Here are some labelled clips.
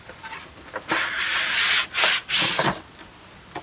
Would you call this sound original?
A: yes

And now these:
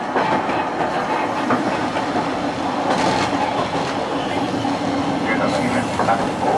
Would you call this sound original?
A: yes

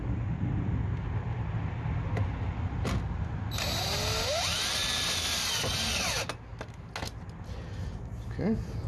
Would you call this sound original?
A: yes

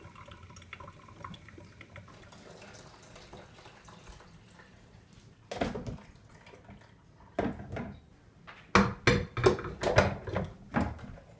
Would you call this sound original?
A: yes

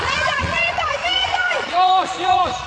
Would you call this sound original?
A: no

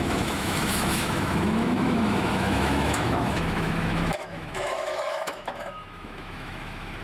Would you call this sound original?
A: no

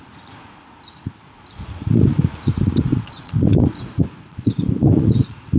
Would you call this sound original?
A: no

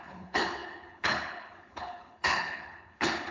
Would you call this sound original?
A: no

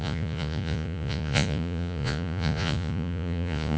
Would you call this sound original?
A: no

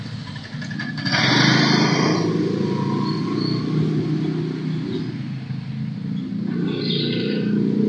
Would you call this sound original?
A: yes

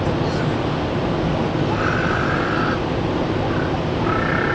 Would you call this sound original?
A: yes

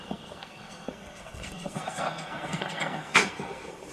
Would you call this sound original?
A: no